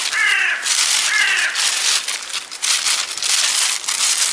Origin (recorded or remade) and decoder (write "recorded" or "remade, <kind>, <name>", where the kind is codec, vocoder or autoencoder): recorded